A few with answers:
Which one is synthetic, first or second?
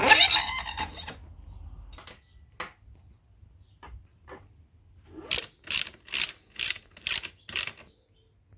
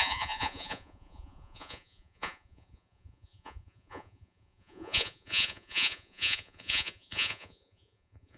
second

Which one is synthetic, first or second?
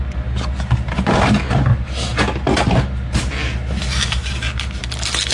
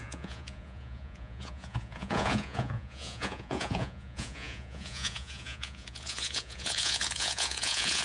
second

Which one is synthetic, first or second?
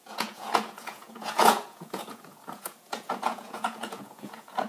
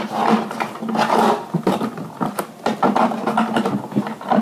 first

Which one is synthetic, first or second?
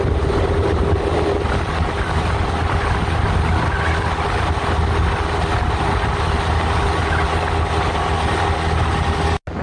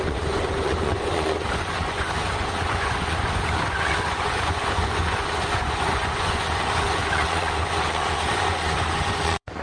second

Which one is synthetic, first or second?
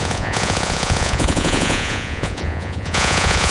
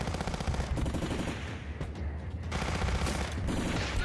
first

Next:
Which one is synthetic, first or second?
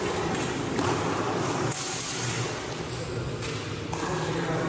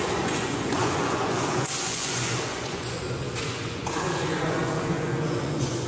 second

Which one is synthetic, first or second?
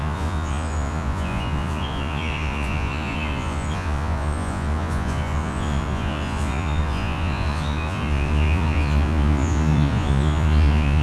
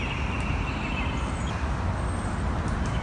first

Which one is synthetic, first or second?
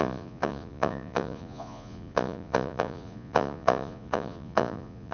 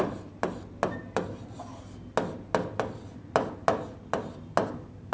first